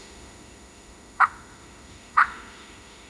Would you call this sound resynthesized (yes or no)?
yes